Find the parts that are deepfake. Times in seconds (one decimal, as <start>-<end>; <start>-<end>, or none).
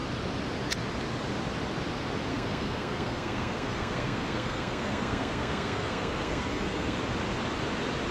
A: 2.3-7.0